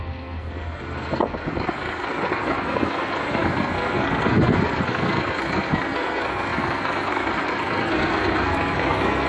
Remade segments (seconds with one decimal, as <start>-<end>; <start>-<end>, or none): 0.0-9.3